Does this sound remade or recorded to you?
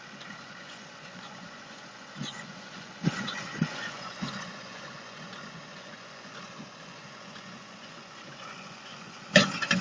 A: remade